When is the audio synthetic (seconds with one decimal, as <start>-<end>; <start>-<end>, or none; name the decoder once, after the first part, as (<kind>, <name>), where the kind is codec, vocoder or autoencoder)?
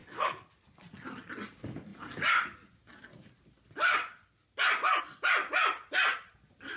0.0-0.5 (codec, HILCodec)